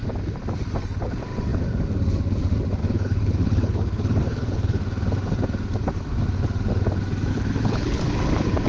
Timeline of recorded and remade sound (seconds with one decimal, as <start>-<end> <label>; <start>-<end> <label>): 0.0-2.8 recorded; 2.8-4.8 remade; 4.8-7.3 recorded; 7.3-8.0 remade; 8.0-8.7 recorded